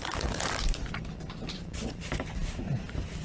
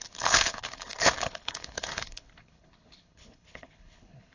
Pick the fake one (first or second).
second